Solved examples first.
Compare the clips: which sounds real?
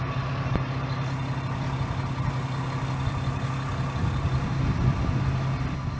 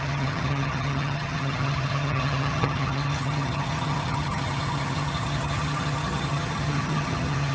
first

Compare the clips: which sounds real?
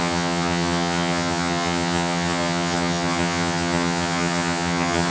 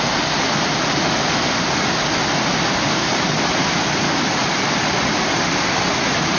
second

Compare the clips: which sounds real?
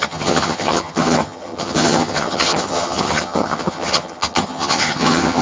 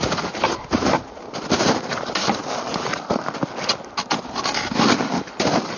second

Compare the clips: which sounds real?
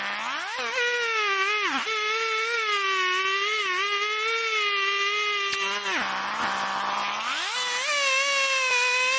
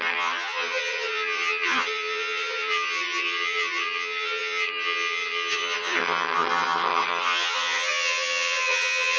first